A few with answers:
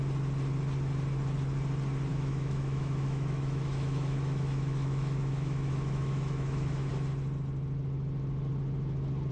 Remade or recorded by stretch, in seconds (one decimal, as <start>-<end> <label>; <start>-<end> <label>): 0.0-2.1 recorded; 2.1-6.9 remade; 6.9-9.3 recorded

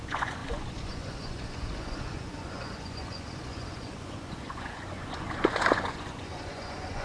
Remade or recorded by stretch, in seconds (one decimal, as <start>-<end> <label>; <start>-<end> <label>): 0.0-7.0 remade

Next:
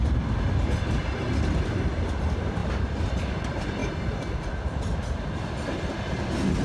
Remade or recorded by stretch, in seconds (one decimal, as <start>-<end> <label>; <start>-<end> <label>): 0.0-6.6 recorded